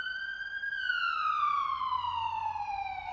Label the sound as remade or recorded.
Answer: recorded